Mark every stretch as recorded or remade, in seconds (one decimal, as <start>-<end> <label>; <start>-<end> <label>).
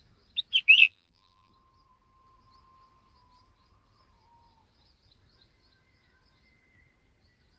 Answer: 0.0-0.8 recorded; 0.8-1.5 remade; 1.5-7.6 recorded